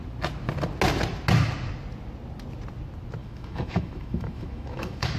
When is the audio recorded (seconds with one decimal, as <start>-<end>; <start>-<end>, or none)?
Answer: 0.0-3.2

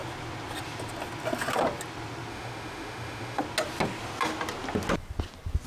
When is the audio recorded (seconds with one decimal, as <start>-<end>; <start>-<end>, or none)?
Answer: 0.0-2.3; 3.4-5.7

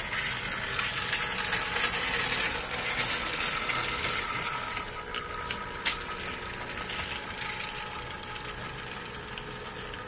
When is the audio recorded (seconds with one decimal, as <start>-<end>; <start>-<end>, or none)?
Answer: 0.0-10.1

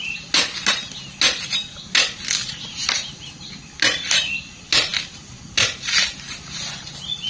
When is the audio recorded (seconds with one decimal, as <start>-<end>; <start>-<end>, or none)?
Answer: 0.0-7.3

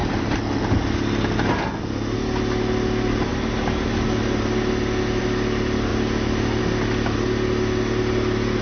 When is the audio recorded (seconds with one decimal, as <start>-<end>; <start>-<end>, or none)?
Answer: 0.0-8.6

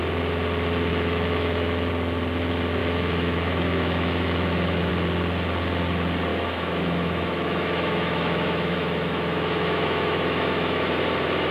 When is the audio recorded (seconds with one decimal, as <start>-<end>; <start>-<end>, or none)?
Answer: 0.0-0.9; 1.9-2.8; 4.9-6.3; 11.0-11.5